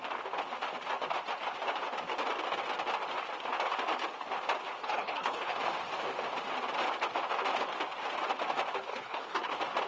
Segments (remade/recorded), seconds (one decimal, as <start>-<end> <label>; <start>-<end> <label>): 0.0-4.8 recorded; 4.8-5.6 remade; 5.6-8.9 recorded; 8.9-9.5 remade; 9.5-9.9 recorded